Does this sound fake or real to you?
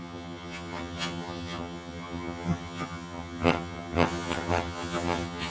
fake